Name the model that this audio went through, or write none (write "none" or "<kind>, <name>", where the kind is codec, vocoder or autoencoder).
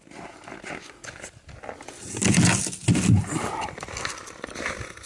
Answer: none